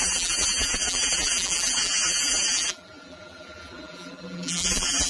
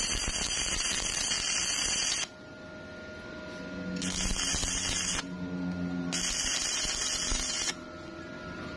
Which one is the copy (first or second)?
first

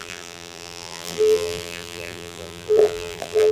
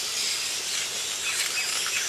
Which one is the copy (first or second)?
first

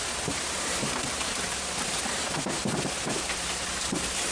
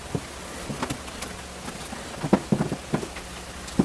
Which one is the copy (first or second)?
first